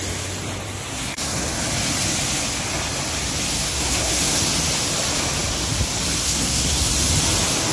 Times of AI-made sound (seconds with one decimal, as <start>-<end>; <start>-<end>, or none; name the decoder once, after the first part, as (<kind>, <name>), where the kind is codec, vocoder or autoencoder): 0.9-1.5 (codec, SNAC); 3.5-4.4; 6.2-6.9